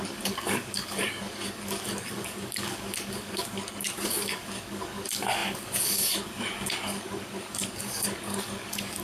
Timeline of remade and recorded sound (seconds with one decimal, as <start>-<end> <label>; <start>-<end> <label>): 0.0-9.0 remade